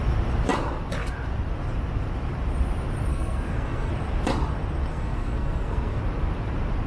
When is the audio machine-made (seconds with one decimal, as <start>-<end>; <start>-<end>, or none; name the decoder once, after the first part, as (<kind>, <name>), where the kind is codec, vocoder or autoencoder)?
3.1-3.9 (codec, SNAC); 4.9-6.0